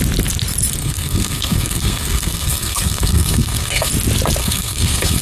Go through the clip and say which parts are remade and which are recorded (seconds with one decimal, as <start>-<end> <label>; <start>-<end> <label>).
0.0-0.8 recorded; 0.8-3.9 remade; 3.9-4.4 recorded; 4.4-5.2 remade